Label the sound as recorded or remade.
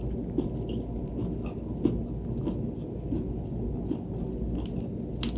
recorded